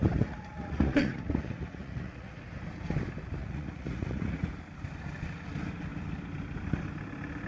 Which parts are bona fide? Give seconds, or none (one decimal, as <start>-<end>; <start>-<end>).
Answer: 2.4-3.4; 4.5-7.5